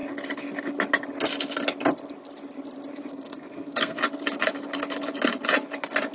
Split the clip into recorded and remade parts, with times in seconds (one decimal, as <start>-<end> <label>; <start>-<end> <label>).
0.0-3.1 recorded; 3.1-4.0 remade; 4.0-6.1 recorded